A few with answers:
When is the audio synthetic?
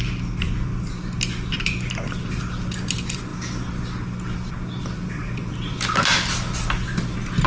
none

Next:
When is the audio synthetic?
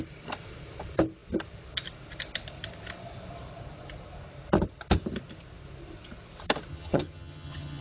6.7-7.8 (vocoder, HiFi-GAN)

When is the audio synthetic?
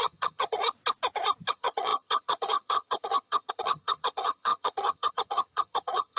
0.0-0.6 (vocoder, HiFi-GAN); 1.5-6.2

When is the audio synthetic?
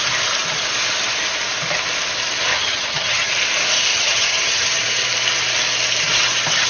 2.5-3.3 (vocoder, HiFi-GAN); 3.9-4.8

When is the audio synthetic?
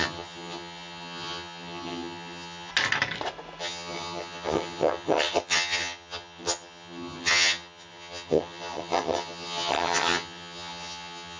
0.0-2.7 (vocoder, HiFi-GAN); 3.6-11.4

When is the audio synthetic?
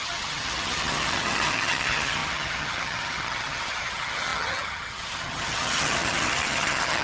0.0-7.0 (vocoder, HiFi-GAN)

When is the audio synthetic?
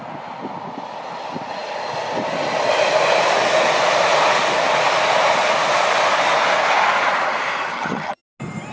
7.7-8.2 (vocoder, HiFi-GAN)